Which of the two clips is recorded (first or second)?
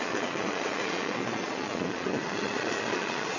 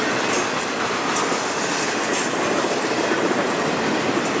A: second